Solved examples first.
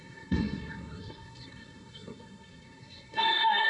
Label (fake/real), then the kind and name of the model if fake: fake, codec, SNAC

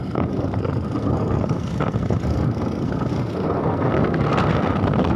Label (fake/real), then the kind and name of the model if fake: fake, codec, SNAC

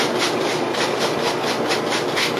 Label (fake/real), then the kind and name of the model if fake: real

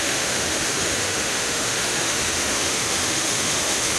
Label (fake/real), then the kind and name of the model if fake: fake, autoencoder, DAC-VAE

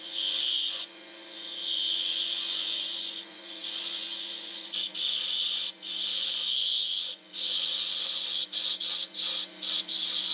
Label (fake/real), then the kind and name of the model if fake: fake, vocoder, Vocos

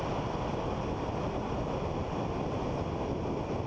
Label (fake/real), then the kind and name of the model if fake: real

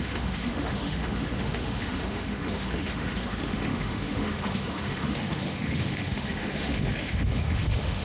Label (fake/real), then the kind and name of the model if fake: fake, autoencoder, DAC-VAE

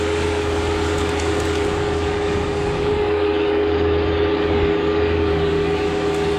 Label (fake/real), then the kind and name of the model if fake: fake, codec, DAC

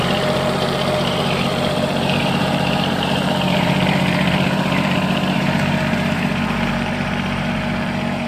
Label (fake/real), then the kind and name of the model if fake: fake, vocoder, BigVGAN v2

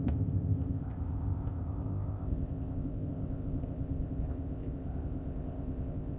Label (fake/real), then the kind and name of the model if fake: fake, codec, ZipCodec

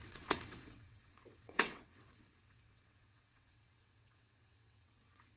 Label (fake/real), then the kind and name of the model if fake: fake, vocoder, WaveNeXt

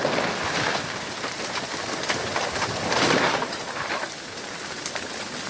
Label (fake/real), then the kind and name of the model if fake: real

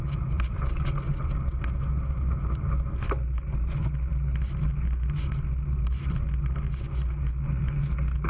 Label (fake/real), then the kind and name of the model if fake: real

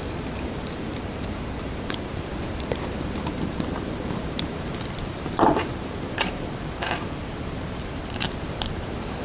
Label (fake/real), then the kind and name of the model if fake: fake, vocoder, BigVGAN v2